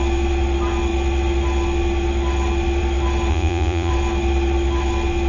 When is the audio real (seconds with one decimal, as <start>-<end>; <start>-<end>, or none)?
0.0-3.3; 3.9-5.3